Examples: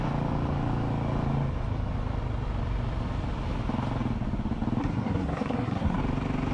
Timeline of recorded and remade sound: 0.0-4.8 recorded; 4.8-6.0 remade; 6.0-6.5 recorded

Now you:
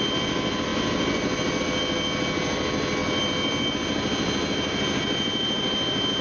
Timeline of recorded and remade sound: 0.0-6.2 recorded

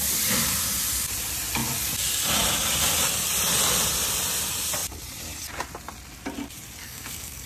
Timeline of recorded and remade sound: 0.0-6.8 recorded; 6.8-7.5 remade

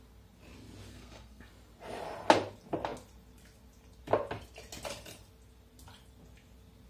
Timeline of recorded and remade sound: 0.0-0.9 recorded; 0.9-1.5 remade; 1.5-6.9 recorded

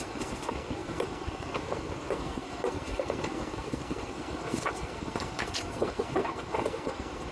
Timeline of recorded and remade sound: 0.0-7.3 remade

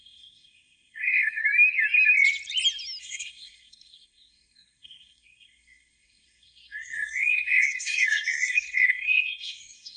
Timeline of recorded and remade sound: 0.0-1.4 remade; 1.4-3.0 recorded; 3.0-10.0 remade

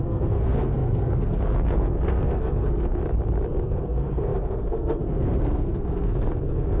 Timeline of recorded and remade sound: 0.0-3.0 remade; 3.0-3.6 recorded; 3.6-6.8 remade